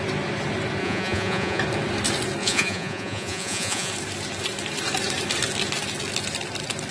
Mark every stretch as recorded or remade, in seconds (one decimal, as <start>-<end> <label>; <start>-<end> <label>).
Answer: 0.0-0.8 recorded; 0.8-1.6 remade; 1.6-2.4 recorded; 2.4-3.9 remade; 3.9-6.9 recorded